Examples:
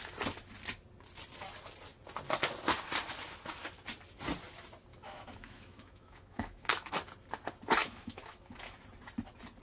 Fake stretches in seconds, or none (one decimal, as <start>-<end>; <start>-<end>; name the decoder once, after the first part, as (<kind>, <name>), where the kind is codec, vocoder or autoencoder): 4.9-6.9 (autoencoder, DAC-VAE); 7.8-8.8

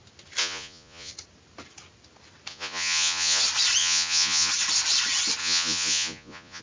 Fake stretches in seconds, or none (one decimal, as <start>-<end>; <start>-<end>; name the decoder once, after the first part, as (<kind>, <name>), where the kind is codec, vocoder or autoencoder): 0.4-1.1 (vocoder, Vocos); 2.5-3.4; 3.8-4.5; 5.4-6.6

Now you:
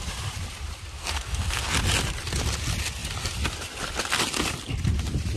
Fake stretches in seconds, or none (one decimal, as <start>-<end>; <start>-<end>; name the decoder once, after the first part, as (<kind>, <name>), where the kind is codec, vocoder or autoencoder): 1.0-1.7 (codec, SNAC)